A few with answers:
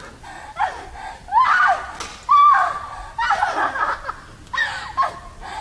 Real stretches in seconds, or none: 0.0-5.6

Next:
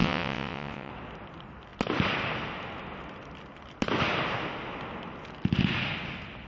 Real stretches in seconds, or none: 0.9-6.5

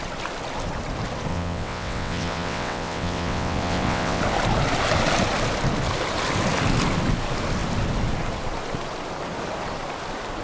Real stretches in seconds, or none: 0.0-1.3; 4.2-10.4